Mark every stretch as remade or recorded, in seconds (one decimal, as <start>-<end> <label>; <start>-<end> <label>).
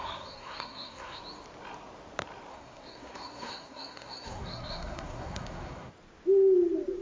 0.0-1.2 remade; 1.2-2.5 recorded; 2.5-5.9 remade; 5.9-7.0 recorded